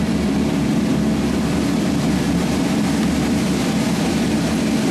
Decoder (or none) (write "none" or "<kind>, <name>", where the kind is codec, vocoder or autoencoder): vocoder, BigVGAN v2